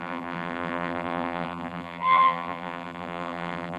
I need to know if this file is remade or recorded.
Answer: remade